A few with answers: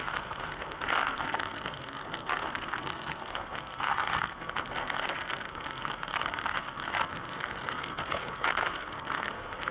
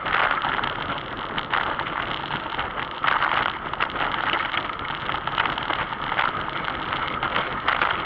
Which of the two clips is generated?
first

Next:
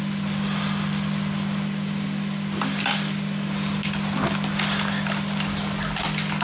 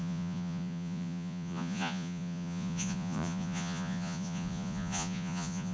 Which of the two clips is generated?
second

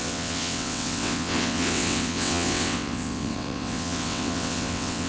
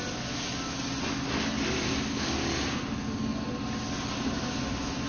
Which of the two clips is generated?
first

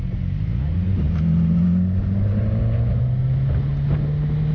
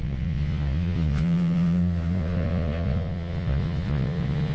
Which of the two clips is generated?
second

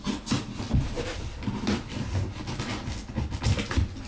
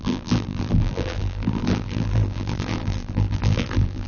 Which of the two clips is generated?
second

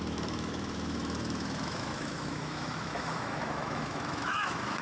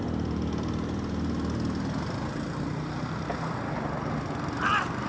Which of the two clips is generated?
first